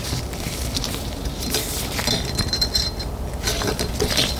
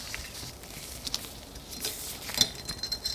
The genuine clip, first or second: second